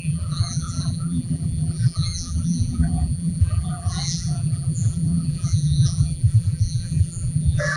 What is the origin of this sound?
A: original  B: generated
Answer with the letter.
B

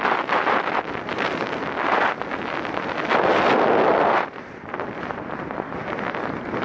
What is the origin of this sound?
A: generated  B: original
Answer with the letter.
B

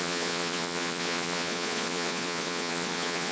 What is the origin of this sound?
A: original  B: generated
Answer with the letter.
B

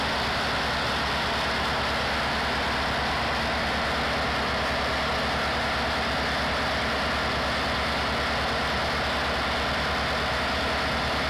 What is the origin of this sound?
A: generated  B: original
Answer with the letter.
B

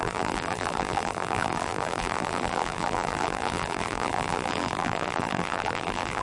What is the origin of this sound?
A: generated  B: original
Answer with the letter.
A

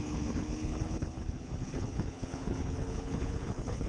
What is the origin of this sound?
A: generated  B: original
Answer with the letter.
A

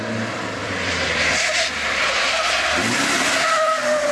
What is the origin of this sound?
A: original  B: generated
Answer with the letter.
B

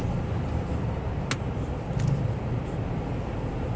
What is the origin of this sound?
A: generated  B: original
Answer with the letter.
B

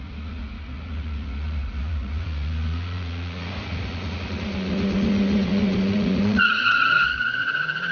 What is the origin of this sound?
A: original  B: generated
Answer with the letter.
B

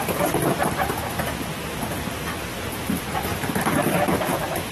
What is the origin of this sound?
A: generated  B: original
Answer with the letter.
B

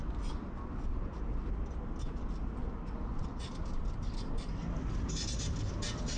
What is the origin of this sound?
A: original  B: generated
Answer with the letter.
A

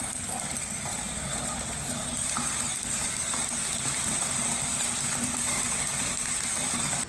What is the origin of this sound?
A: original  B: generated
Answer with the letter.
A